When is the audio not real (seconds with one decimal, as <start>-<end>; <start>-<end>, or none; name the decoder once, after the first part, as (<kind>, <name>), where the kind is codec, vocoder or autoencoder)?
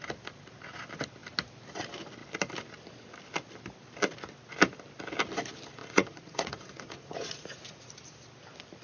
5.8-7.9 (vocoder, Vocos)